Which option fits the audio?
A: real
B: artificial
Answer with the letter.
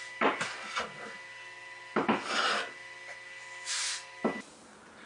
A